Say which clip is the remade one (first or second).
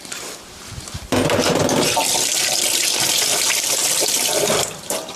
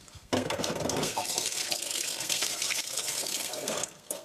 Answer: second